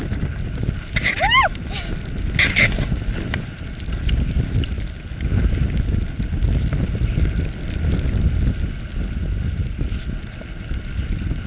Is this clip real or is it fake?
real